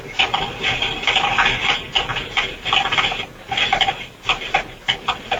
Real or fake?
real